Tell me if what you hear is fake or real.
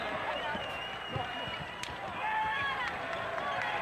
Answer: fake